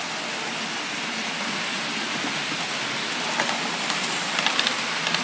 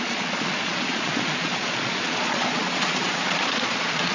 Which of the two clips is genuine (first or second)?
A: first